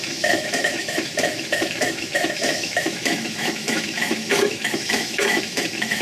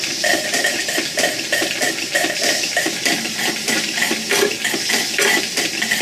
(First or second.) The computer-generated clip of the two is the first